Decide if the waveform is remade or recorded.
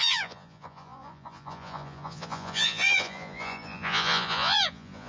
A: remade